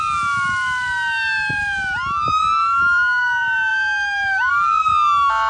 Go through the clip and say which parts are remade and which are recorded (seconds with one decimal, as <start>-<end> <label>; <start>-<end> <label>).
0.0-5.5 recorded

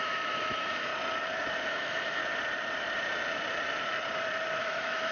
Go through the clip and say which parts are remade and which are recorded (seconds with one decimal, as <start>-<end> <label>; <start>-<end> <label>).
0.0-0.9 remade; 0.9-1.7 recorded; 1.7-2.2 remade; 2.2-4.6 recorded; 4.6-5.1 remade

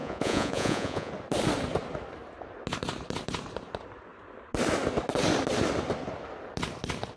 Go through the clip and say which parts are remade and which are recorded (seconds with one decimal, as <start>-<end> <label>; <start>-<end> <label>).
0.0-1.1 remade; 1.1-7.2 recorded

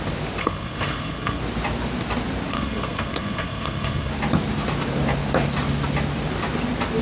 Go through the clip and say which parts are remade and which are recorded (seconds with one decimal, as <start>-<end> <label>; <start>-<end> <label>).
0.0-0.4 recorded; 0.4-1.4 remade; 1.4-2.5 recorded; 2.5-4.1 remade; 4.1-7.0 recorded

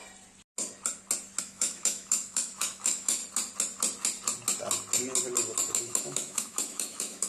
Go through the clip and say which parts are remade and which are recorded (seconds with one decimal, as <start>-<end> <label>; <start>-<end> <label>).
0.0-1.4 recorded; 1.4-3.2 remade; 3.2-5.7 recorded; 5.7-7.3 remade

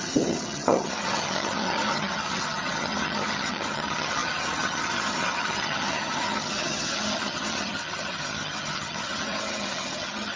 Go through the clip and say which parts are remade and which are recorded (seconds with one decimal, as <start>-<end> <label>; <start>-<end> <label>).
0.0-10.4 remade

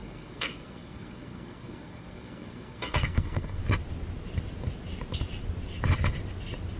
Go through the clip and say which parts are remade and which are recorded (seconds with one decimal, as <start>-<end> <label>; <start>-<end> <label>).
0.0-3.6 remade; 3.6-6.8 recorded